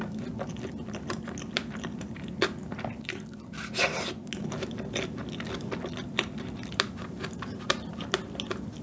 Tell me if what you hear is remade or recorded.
recorded